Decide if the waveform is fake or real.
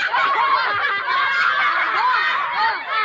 real